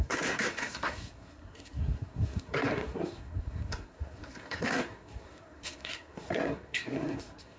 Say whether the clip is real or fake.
fake